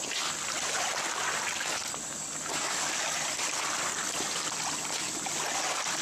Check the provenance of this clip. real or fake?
real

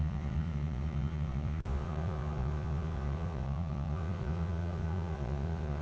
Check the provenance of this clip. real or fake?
fake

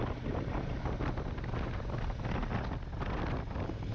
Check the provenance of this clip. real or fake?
real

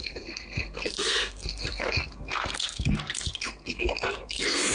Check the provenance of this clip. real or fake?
fake